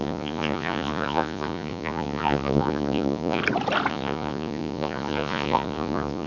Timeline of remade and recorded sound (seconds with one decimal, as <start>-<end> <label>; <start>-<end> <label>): 0.0-3.4 remade; 3.4-3.9 recorded; 3.9-6.3 remade